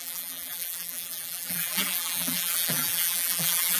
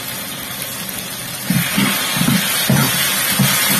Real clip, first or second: second